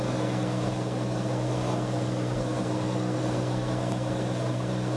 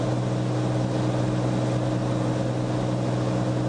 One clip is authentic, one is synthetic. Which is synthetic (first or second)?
first